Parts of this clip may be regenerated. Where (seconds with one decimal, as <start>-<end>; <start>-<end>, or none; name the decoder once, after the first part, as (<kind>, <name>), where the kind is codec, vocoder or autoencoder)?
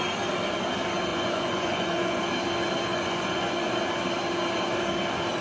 1.1-2.2 (vocoder, Vocos); 2.9-3.7